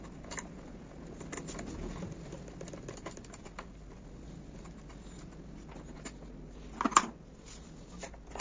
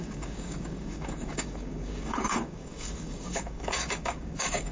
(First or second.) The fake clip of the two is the second